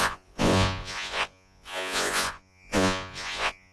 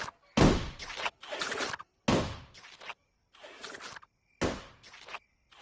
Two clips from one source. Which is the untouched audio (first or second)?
second